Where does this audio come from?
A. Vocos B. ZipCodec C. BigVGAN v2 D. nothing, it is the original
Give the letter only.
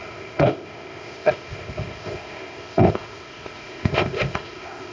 B